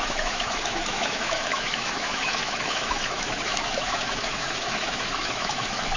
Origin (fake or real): fake